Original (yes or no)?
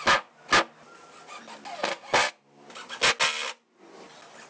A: yes